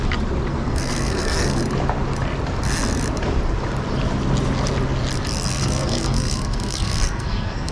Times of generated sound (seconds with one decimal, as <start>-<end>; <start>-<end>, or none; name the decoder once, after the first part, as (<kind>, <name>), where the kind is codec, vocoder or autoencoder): 0.5-1.6 (codec, SNAC); 5.5-7.7